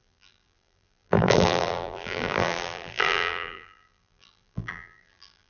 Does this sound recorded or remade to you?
remade